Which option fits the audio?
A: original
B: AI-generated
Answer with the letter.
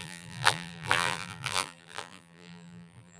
B